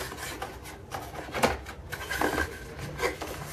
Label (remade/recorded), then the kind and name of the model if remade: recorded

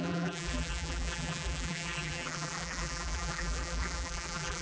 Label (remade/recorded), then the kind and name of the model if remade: remade, vocoder, BigVGAN v2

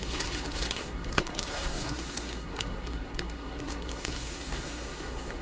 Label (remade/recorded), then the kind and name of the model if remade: remade, codec, SNAC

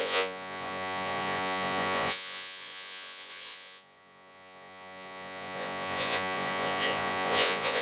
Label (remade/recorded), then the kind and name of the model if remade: remade, vocoder, Vocos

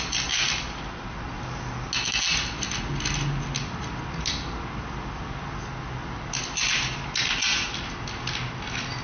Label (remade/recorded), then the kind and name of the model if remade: recorded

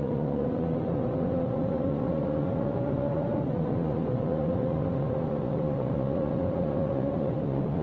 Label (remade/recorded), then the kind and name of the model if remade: remade, vocoder, Vocos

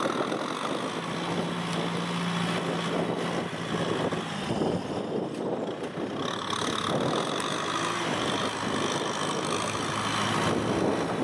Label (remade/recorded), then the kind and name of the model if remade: recorded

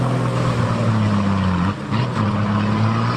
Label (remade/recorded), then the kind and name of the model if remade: recorded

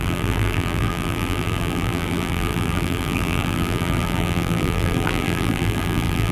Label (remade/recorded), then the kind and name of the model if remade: remade, vocoder, BigVGAN v2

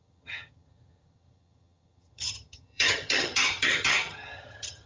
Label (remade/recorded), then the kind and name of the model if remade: remade, vocoder, HiFi-GAN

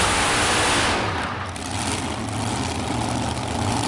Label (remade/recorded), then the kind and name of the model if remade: recorded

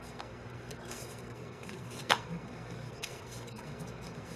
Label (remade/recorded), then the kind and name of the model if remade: remade, codec, SNAC